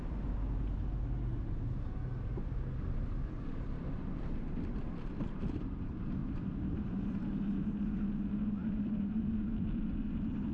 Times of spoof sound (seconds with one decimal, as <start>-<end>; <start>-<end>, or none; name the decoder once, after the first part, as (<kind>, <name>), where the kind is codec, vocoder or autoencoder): 8.6-9.9 (vocoder, BigVGAN v2)